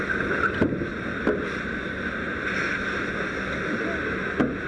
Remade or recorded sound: recorded